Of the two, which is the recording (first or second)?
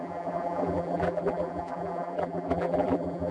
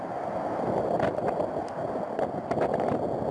second